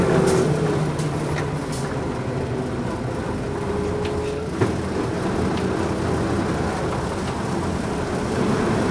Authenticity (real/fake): real